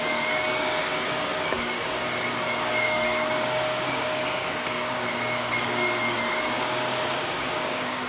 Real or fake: fake